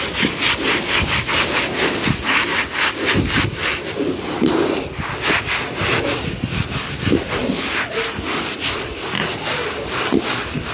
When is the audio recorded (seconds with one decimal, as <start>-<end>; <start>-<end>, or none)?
0.0-10.7